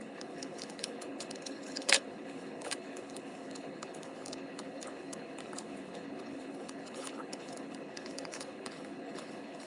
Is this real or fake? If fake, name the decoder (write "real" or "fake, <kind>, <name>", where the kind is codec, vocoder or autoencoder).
fake, codec, HILCodec